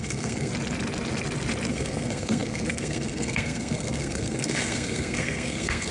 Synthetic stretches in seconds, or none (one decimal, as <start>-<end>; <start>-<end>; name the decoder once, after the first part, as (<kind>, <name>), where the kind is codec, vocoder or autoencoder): 0.0-0.5 (codec, SNAC); 1.7-5.9